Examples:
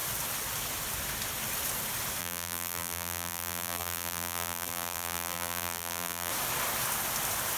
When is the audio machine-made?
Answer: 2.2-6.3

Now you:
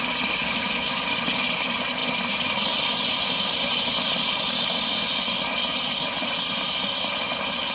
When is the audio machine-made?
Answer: 0.4-1.0

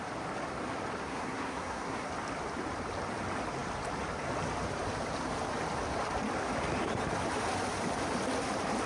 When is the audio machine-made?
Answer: 1.0-2.1